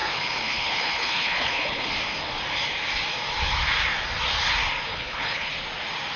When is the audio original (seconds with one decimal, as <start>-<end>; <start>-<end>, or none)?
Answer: 1.9-4.9; 5.5-6.2